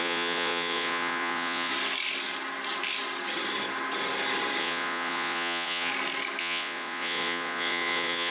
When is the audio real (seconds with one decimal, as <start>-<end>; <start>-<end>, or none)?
1.7-4.6; 5.9-6.4